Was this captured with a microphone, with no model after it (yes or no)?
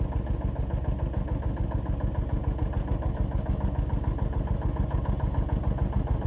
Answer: yes